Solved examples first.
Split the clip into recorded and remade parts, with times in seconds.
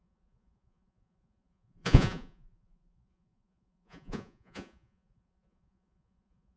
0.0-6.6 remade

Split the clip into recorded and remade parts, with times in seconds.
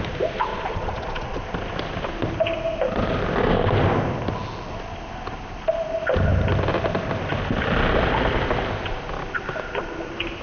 0.0-0.5 recorded; 0.5-1.4 remade; 1.4-10.4 recorded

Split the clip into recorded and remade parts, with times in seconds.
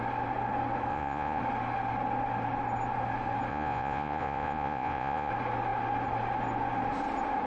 0.0-0.9 recorded; 0.9-1.4 remade; 1.4-3.5 recorded; 3.5-5.3 remade; 5.3-7.5 recorded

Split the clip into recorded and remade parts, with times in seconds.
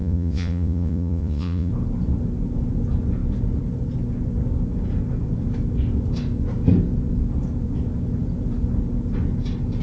0.0-1.7 remade; 1.7-9.8 recorded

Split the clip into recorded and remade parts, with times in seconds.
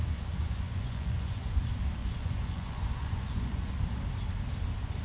0.0-0.4 recorded; 0.4-1.6 remade; 1.6-2.0 recorded; 2.0-3.7 remade; 3.7-5.0 recorded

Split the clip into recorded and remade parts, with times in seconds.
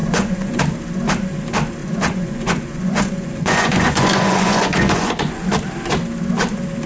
0.0-0.6 remade; 0.6-1.8 recorded; 1.8-5.5 remade; 5.5-6.9 recorded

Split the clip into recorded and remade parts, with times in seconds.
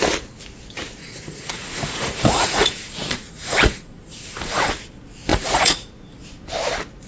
0.0-1.0 recorded; 1.0-4.7 remade; 4.7-5.3 recorded; 5.3-5.9 remade; 5.9-7.1 recorded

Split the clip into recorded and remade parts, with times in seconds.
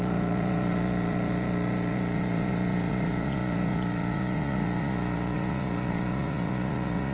0.0-7.1 remade